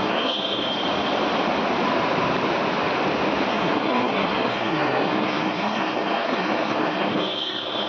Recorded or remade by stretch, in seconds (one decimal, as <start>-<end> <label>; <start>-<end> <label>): 0.0-0.7 remade; 0.7-3.5 recorded; 3.5-7.9 remade